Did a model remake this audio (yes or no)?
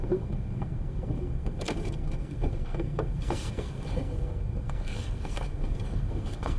yes